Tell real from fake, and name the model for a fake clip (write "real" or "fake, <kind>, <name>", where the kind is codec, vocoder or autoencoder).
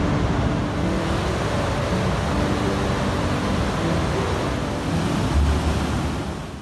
real